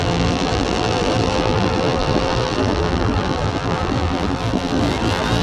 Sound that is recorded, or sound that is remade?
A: remade